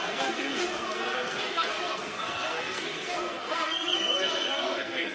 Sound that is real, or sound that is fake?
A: fake